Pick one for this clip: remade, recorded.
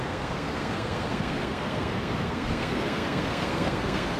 remade